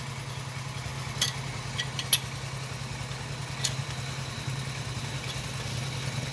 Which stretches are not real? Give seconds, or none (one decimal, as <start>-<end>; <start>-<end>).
none